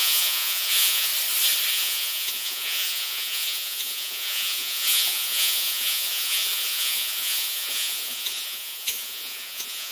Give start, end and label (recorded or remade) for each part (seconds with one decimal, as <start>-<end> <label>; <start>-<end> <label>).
0.0-1.1 remade; 1.1-1.7 recorded; 1.7-9.9 remade

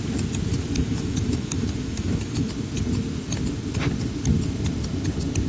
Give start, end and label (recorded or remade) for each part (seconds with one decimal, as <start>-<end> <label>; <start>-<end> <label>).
0.0-0.5 recorded; 0.5-2.5 remade; 2.5-5.5 recorded